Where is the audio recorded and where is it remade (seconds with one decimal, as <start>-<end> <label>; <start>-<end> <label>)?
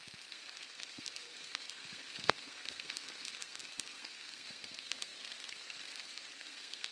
0.0-6.9 remade